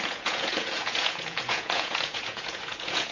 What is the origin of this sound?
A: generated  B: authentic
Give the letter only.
A